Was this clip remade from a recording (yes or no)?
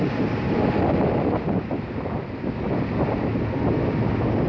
no